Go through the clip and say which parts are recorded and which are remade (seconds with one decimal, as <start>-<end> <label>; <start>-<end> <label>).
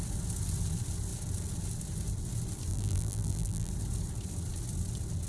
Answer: 0.0-2.7 recorded; 2.7-3.7 remade; 3.7-5.3 recorded